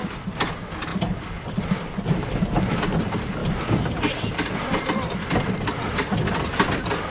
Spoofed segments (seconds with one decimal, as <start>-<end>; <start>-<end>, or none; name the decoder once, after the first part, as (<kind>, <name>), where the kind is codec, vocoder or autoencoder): 0.9-1.6 (vocoder, BigVGAN v2); 3.4-7.1